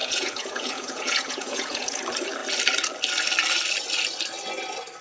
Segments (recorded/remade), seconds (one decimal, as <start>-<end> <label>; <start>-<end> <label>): 0.0-2.0 remade; 2.0-5.0 recorded